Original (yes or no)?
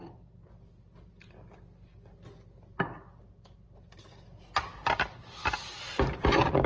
yes